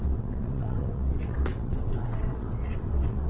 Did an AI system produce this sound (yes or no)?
yes